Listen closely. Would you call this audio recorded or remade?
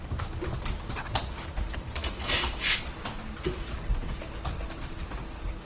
recorded